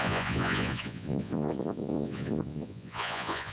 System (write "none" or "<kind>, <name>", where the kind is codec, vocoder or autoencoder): vocoder, Vocos